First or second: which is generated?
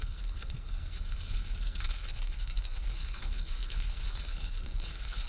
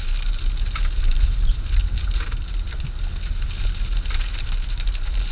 first